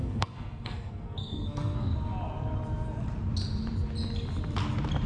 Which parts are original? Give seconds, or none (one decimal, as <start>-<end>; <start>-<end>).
1.9-5.1